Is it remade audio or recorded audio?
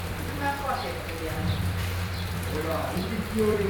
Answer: remade